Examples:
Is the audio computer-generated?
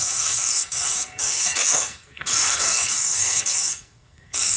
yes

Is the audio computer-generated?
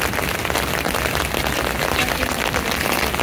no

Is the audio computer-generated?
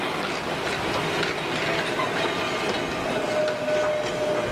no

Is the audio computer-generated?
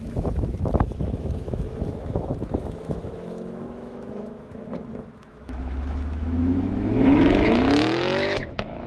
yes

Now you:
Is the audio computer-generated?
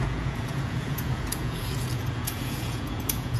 yes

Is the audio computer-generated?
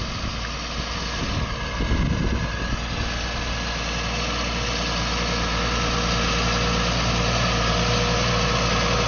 no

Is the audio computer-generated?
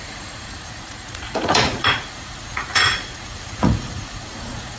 yes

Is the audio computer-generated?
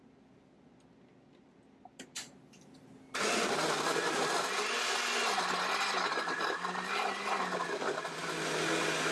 no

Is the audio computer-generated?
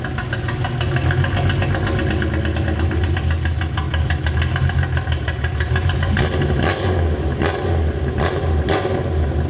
no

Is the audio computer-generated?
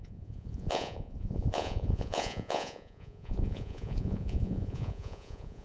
yes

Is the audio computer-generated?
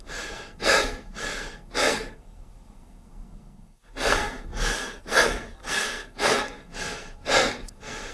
yes